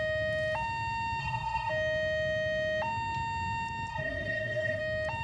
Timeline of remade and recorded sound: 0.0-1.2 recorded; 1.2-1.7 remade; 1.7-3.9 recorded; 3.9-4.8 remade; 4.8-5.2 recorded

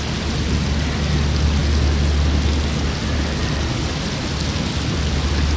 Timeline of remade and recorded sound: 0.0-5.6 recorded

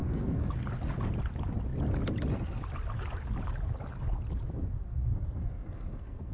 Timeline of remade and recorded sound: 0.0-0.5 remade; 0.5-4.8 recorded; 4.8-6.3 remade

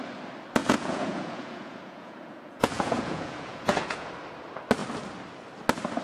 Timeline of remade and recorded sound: 0.0-0.6 recorded; 0.6-4.1 remade; 4.1-6.0 recorded

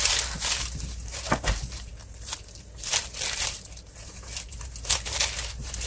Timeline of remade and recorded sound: 0.0-5.9 recorded